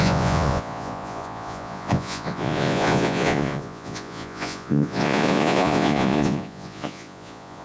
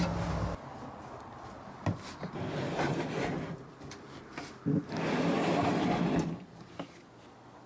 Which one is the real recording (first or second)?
second